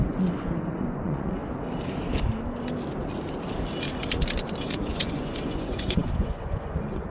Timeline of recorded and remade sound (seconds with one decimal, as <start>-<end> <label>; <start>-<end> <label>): 0.0-1.4 remade; 1.4-4.6 recorded; 4.6-7.1 remade